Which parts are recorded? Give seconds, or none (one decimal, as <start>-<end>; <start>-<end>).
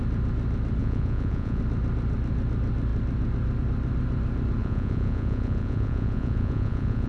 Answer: 0.0-0.8; 1.6-4.6